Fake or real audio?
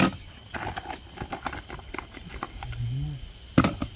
real